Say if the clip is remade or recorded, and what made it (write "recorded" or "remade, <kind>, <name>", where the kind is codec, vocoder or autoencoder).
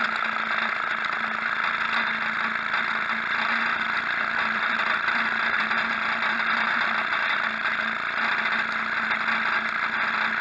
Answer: recorded